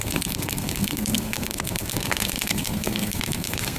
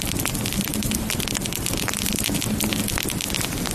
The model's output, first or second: first